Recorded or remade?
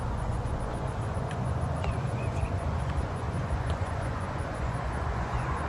remade